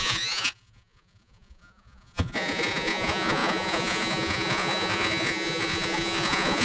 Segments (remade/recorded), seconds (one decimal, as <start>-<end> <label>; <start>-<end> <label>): 0.0-6.6 remade